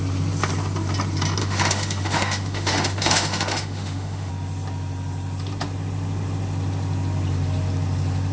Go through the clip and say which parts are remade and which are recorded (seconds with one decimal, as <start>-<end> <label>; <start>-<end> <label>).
0.0-1.4 recorded; 1.4-4.3 remade; 4.3-8.3 recorded

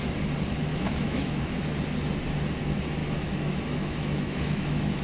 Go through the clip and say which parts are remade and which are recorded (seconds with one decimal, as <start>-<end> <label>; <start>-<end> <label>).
0.0-0.7 recorded; 0.7-1.4 remade; 1.4-3.0 recorded; 3.0-5.0 remade

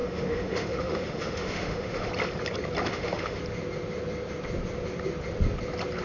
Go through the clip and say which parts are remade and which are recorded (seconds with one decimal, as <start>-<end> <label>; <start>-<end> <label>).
0.0-2.1 remade; 2.1-2.9 recorded; 2.9-3.4 remade; 3.4-6.0 recorded

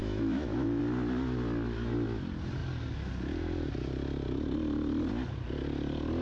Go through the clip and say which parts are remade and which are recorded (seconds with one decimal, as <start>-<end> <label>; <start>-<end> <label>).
0.0-0.8 remade; 0.8-6.2 recorded

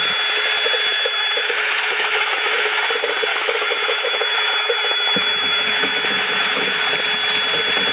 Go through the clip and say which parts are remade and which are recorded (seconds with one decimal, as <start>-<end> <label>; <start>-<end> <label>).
0.0-0.9 recorded; 0.9-2.8 remade; 2.8-3.3 recorded; 3.3-6.8 remade; 6.8-7.9 recorded